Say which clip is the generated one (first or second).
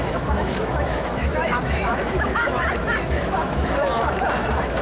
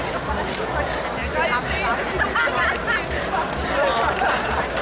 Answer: first